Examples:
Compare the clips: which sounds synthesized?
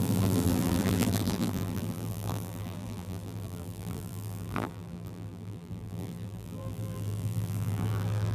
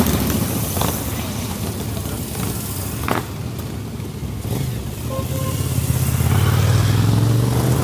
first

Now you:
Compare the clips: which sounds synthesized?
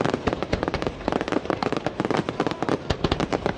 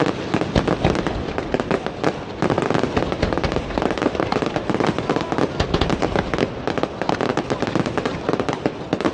first